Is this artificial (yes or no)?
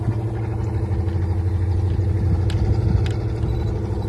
no